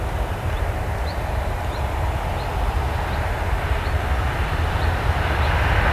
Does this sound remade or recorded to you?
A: recorded